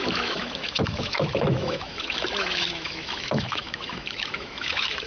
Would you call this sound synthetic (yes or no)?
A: yes